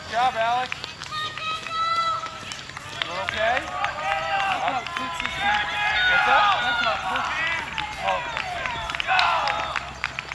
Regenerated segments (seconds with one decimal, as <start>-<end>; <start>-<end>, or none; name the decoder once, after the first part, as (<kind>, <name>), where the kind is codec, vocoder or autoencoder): 1.0-2.4 (autoencoder, DAC-VAE)